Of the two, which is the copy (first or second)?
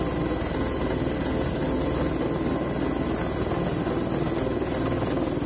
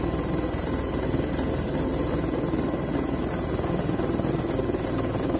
second